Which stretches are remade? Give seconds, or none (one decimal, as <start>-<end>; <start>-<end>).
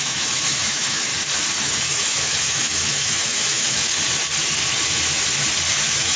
0.0-1.1; 1.6-3.9; 5.7-6.2